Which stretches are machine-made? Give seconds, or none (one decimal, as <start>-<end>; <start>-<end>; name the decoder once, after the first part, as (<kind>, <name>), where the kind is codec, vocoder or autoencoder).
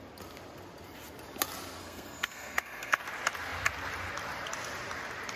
1.8-3.0 (codec, SNAC)